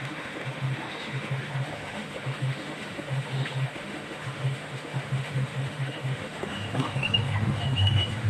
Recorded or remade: remade